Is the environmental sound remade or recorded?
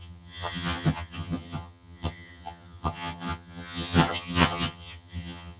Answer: remade